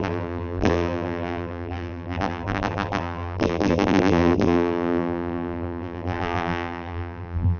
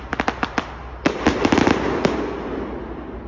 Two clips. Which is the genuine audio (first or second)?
second